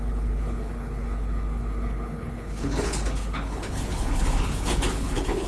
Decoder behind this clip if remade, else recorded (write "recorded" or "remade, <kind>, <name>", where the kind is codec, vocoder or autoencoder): remade, codec, HILCodec